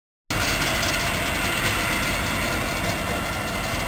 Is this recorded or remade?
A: recorded